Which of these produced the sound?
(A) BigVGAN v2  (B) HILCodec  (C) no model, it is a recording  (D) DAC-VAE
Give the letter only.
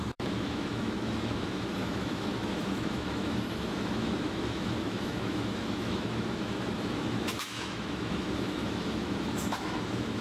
D